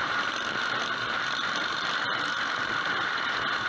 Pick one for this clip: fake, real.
fake